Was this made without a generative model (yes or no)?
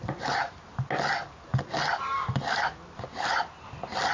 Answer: yes